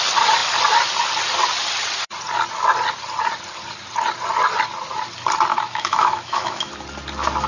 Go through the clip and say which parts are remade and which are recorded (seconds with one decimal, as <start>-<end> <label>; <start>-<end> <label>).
0.0-5.5 recorded; 5.5-6.7 remade; 6.7-7.5 recorded